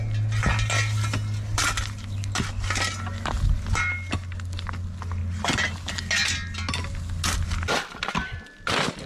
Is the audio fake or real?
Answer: real